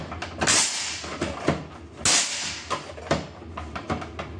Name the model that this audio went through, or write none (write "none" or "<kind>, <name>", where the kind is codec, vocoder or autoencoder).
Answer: none